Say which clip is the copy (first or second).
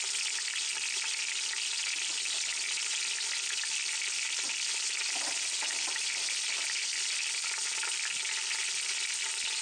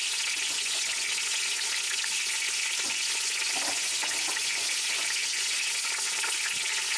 second